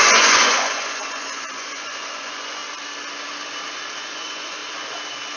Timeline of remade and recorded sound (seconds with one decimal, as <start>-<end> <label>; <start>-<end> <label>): 0.0-2.6 remade; 2.6-4.0 recorded; 4.0-4.6 remade; 4.6-5.4 recorded